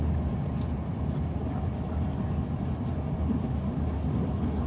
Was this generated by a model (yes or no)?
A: no